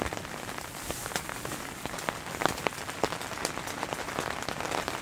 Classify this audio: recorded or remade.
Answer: recorded